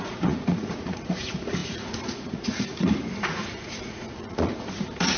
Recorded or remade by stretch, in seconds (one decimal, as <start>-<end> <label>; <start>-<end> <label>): 0.0-5.2 remade